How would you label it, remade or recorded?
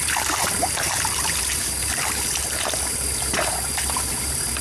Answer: remade